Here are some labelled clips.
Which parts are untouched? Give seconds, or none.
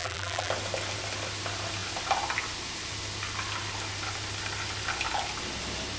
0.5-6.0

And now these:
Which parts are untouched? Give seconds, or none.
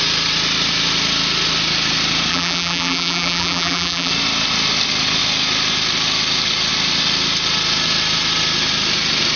0.0-2.3; 4.1-9.4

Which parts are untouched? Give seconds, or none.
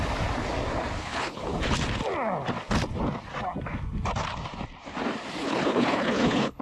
0.0-1.0; 1.5-5.4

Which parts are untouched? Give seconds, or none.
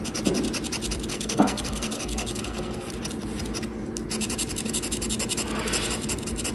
0.0-1.1; 2.9-6.5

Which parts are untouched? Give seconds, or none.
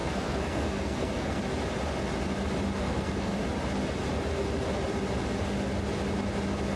1.4-2.8; 3.4-6.8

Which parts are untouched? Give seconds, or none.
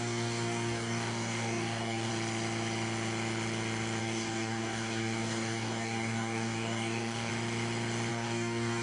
2.1-4.0; 7.3-8.1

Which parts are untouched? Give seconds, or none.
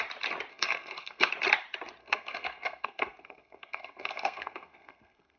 0.0-0.5; 1.3-2.0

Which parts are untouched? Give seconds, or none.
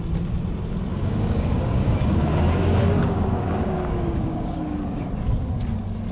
0.0-0.9; 4.6-6.1